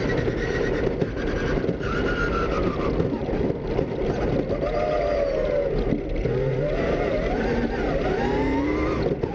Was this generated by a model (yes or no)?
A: no